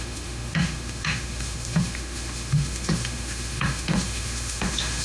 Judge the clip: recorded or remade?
remade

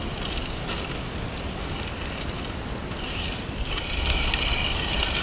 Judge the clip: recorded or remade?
recorded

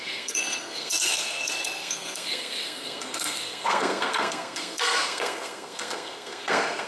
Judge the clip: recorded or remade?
remade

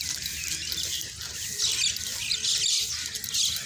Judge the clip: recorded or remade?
recorded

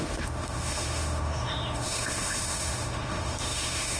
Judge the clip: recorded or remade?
remade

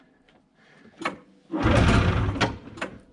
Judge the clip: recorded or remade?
recorded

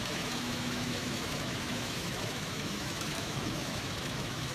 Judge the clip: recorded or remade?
remade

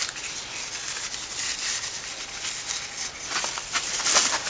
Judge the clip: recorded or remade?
recorded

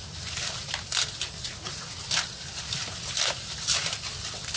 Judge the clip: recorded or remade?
recorded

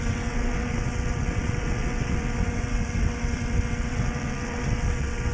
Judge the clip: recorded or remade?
remade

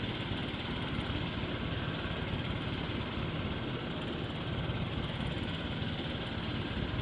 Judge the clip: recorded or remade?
recorded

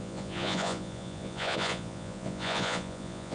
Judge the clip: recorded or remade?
remade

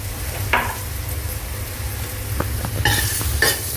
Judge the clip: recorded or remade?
recorded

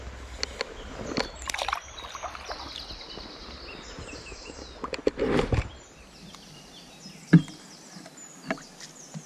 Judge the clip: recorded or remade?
recorded